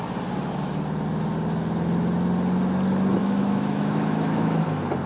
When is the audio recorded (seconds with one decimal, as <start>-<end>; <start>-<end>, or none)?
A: 0.0-3.2; 4.6-5.1